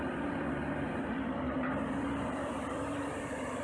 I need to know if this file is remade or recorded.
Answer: remade